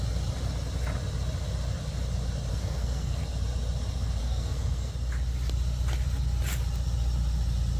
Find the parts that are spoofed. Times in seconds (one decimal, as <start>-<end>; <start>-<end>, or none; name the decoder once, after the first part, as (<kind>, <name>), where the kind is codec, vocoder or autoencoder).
2.5-3.2 (codec, SNAC); 4.2-4.9

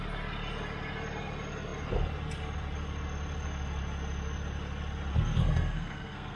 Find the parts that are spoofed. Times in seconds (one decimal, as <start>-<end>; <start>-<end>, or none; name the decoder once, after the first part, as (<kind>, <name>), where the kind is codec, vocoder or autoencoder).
5.1-6.4 (codec, SNAC)

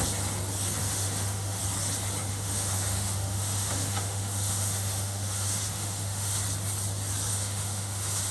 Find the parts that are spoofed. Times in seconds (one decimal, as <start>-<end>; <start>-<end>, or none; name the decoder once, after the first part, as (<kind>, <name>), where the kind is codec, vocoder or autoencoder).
0.8-1.6 (autoencoder, DAC-VAE); 2.3-6.4; 7.3-8.3

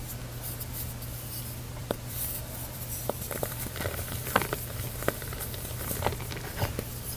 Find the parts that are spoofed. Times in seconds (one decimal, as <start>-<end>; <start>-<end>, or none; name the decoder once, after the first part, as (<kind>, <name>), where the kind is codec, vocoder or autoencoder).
1.8-6.1 (vocoder, BigVGAN v2)

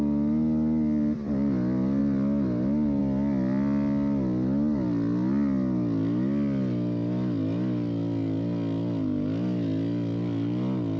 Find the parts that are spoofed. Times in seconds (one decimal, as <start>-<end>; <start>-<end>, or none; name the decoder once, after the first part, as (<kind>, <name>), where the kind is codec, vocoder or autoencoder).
none

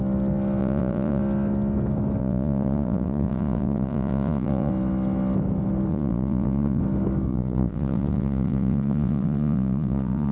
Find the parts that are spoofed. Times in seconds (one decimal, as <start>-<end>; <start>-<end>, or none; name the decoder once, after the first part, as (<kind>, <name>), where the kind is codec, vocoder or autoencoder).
0.6-1.2 (vocoder, Vocos); 2.2-4.7; 5.9-6.8; 7.3-10.3

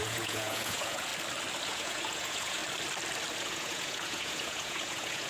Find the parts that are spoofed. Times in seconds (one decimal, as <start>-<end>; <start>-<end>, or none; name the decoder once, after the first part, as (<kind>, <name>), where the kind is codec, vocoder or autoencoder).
0.0-1.1 (vocoder, Vocos); 1.7-2.6; 3.4-5.3

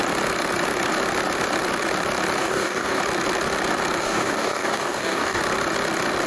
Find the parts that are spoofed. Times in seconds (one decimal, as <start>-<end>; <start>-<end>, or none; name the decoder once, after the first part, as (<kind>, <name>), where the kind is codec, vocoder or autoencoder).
2.4-3.0 (codec, DAC); 4.0-5.4